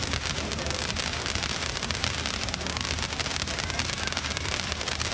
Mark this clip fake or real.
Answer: real